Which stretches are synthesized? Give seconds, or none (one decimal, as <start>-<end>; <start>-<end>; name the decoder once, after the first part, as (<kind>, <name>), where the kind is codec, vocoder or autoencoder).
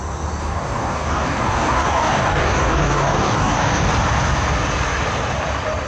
0.4-3.9 (codec, DAC)